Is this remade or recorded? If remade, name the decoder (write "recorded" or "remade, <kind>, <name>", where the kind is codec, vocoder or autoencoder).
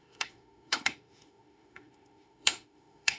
remade, autoencoder, DAC-VAE